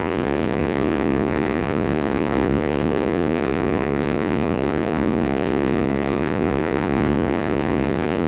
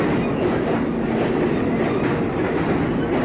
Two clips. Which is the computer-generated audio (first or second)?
first